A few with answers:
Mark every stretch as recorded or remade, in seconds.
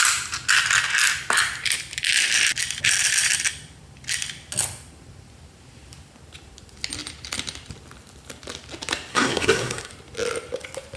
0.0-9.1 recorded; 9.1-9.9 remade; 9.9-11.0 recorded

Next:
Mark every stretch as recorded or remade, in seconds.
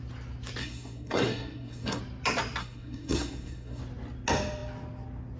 0.0-0.6 recorded; 0.6-2.0 remade; 2.0-2.6 recorded; 2.6-3.8 remade; 3.8-5.4 recorded